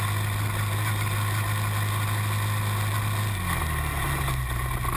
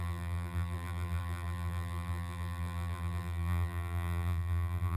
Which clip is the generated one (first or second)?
second